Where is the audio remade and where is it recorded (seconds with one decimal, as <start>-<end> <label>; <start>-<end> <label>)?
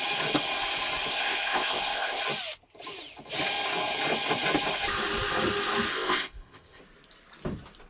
0.0-1.1 recorded; 1.1-2.2 remade; 2.2-5.9 recorded; 5.9-6.8 remade; 6.8-7.9 recorded